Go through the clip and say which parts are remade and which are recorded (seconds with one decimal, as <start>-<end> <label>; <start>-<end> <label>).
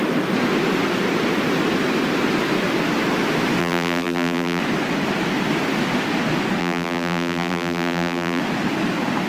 0.0-3.6 recorded; 3.6-4.6 remade; 4.6-6.6 recorded; 6.6-8.4 remade; 8.4-9.3 recorded